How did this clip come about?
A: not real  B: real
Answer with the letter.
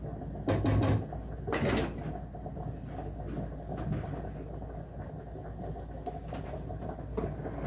B